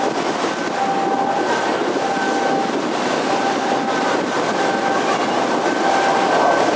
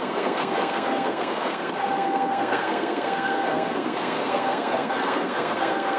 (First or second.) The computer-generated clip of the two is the second